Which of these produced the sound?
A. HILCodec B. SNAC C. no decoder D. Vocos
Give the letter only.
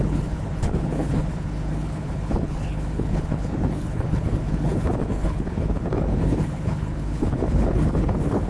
A